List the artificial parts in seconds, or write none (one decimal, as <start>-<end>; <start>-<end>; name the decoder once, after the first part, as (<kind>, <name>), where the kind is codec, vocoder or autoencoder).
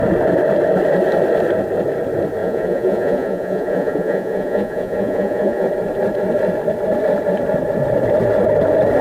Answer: 2.4-5.7 (vocoder, Vocos)